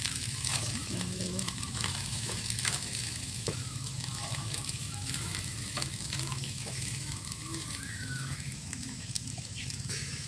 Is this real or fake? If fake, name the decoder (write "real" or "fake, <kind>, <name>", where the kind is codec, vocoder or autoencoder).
fake, autoencoder, DAC-VAE